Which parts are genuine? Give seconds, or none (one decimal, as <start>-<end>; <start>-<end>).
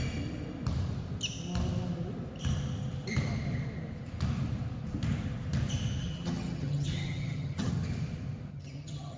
0.0-6.0; 7.7-8.5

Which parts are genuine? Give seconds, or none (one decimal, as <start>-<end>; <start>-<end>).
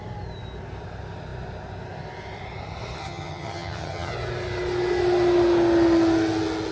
0.0-3.0; 4.1-6.7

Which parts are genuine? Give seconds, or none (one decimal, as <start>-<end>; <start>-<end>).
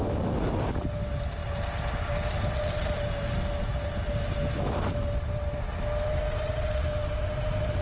0.0-7.8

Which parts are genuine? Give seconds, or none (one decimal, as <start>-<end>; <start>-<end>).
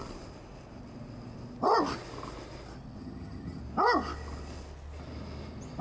0.0-3.0; 3.6-5.8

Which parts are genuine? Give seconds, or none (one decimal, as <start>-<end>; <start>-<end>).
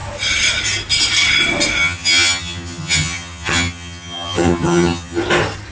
0.0-1.8; 5.2-5.7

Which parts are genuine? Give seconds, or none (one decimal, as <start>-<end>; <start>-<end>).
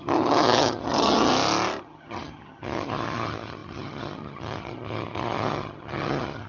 1.3-1.8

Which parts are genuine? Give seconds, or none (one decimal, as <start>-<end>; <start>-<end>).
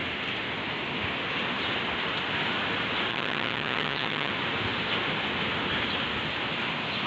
0.0-3.1; 4.3-7.1